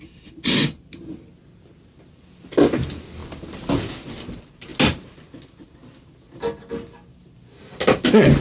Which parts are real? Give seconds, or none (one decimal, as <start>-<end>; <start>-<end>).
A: 0.0-8.4